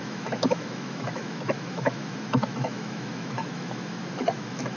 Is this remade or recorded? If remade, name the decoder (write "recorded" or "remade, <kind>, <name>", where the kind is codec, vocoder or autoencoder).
remade, autoencoder, DAC-VAE